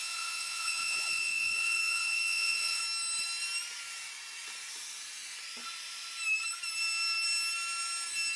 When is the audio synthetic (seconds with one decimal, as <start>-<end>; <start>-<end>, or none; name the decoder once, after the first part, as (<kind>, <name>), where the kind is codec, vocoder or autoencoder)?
0.0-2.8 (vocoder, Vocos)